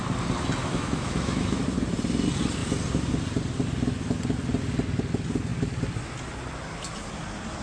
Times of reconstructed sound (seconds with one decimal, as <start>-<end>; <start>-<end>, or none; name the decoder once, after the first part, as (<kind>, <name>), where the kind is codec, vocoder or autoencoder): 0.6-1.6 (autoencoder, DAC-VAE)